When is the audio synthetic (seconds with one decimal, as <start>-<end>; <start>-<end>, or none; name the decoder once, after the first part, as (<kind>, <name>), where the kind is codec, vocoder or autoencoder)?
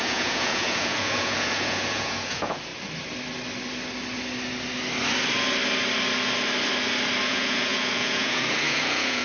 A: 0.0-2.7 (vocoder, Vocos); 7.3-9.2